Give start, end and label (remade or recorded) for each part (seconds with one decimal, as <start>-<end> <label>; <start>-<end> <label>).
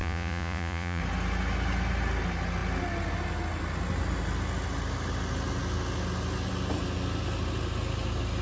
0.0-1.0 remade; 1.0-8.4 recorded